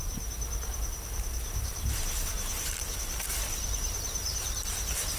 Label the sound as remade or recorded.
remade